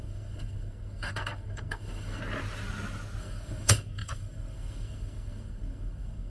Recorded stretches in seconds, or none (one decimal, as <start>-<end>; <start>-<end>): 2.2-3.2